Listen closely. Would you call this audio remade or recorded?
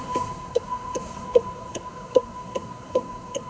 remade